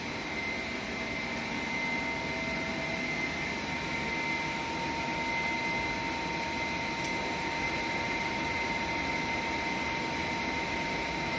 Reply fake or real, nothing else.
real